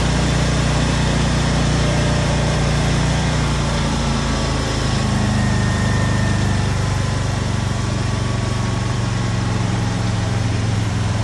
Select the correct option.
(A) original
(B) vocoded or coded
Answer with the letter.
B